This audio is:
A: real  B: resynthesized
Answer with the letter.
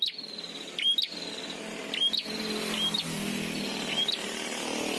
A